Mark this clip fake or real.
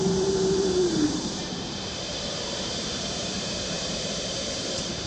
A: fake